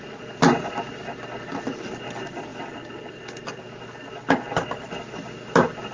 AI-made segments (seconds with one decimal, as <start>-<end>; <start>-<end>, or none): none